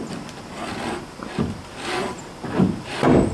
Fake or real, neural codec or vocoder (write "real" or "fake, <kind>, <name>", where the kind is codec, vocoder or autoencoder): real